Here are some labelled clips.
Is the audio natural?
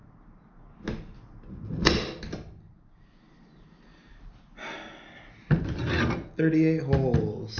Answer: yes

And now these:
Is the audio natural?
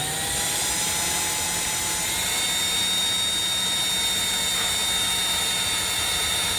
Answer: yes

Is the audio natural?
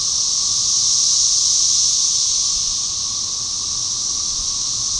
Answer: yes